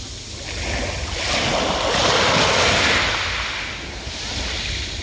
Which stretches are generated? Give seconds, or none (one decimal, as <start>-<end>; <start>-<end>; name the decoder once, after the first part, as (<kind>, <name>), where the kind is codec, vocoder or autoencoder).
none